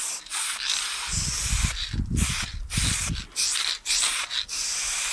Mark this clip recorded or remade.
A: recorded